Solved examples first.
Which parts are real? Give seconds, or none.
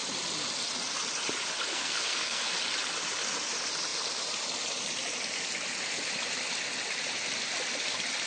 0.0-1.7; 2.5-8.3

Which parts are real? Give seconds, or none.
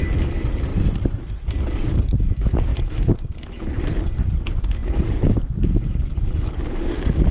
0.0-2.7; 3.3-4.8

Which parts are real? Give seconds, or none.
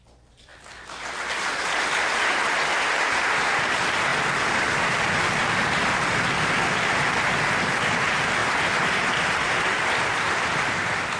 0.0-4.1; 6.5-8.4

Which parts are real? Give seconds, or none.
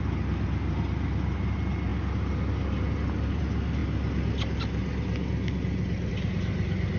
0.0-7.0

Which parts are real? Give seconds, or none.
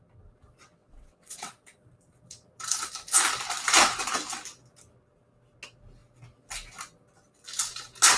0.0-0.6; 1.5-8.2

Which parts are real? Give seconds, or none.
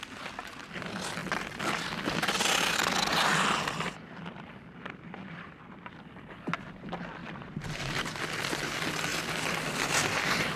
0.0-7.2; 8.2-10.6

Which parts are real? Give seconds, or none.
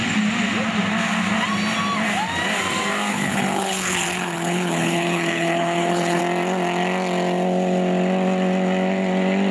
0.0-3.1; 6.2-9.5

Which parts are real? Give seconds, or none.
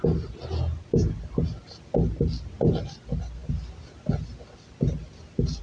0.0-5.6